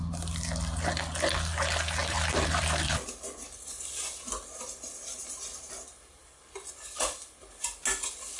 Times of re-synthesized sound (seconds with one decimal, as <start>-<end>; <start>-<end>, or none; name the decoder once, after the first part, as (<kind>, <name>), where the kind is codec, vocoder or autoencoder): 2.0-5.6 (vocoder, BigVGAN v2); 6.2-6.7